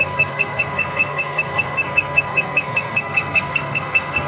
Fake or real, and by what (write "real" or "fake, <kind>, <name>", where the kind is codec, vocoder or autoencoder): fake, codec, SNAC